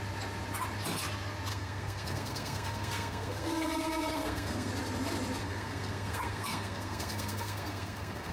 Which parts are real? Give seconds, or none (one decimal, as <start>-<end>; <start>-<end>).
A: 0.0-1.5; 4.7-5.4